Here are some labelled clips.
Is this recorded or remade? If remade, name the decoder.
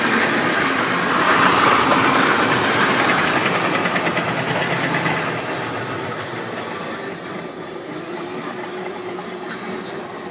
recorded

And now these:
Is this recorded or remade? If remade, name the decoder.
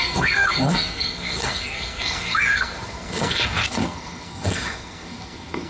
remade, codec, SNAC